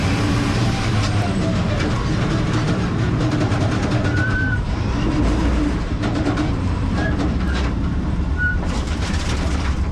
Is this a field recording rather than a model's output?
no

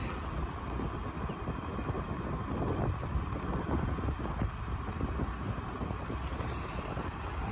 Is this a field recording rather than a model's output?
yes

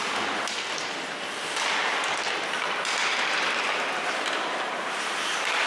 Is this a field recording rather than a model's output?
yes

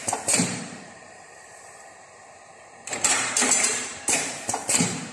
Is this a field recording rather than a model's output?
no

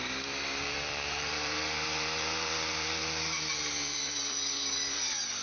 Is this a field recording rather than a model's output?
no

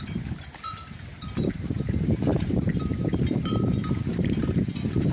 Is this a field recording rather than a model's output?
no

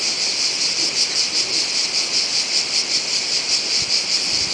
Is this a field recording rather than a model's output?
yes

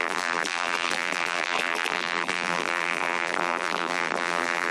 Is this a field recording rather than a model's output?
no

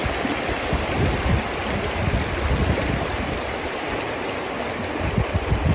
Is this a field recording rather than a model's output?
no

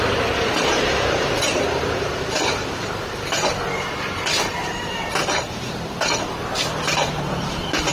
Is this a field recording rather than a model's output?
no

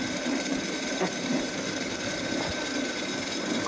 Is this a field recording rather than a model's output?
no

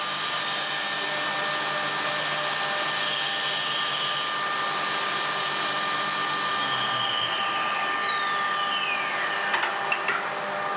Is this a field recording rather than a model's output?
yes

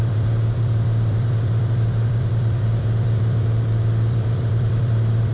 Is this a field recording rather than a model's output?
no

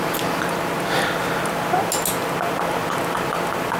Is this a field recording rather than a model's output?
yes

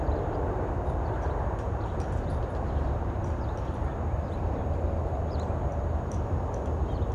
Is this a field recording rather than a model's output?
no